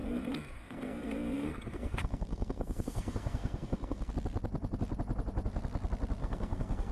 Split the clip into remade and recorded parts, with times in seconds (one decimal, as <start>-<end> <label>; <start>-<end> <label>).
0.0-4.1 remade; 4.1-6.2 recorded; 6.2-6.9 remade